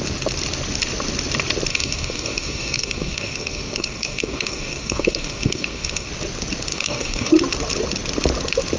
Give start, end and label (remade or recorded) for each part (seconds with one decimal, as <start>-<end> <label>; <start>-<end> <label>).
0.0-1.7 recorded; 1.7-6.1 remade; 6.1-6.7 recorded; 6.7-7.3 remade; 7.3-8.8 recorded